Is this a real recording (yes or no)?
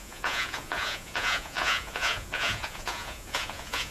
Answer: no